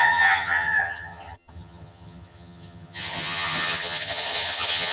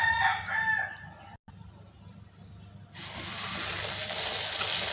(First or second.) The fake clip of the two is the first